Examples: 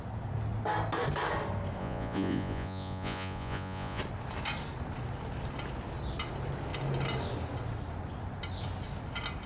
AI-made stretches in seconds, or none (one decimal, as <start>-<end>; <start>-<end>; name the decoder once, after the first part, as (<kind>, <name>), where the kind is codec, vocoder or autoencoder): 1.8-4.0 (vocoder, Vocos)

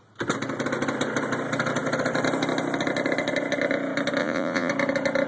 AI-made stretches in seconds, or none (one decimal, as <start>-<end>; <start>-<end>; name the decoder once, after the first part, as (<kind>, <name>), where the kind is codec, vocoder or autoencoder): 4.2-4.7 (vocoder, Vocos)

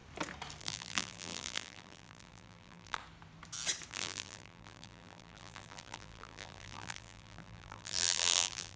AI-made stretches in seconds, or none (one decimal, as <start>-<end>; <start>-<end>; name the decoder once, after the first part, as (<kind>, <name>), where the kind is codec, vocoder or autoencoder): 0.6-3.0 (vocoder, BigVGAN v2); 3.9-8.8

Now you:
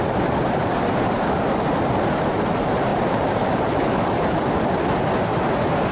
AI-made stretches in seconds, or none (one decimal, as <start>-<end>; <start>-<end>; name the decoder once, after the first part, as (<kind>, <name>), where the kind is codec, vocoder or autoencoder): 0.0-1.2 (vocoder, BigVGAN v2); 2.9-3.7

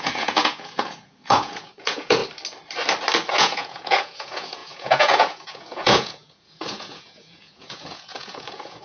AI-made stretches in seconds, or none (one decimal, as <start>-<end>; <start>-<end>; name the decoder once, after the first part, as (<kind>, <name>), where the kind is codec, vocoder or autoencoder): 0.0-2.2 (vocoder, Vocos); 3.3-8.8

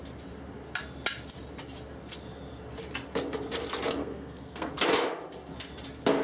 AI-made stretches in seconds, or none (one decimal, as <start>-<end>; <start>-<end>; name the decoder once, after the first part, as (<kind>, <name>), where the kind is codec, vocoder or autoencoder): 4.0-4.7 (codec, SNAC)

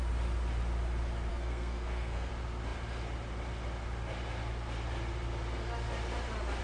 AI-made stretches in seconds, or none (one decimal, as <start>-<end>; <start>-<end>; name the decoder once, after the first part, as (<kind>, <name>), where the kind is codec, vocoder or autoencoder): 1.3-2.3 (codec, SNAC)